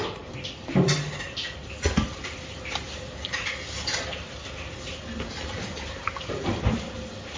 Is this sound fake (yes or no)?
no